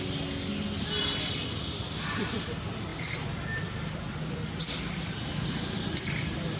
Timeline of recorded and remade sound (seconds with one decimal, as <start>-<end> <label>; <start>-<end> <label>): 0.0-6.6 recorded